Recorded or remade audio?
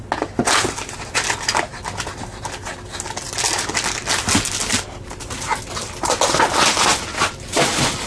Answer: recorded